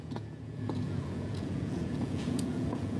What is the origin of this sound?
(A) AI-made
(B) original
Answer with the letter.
A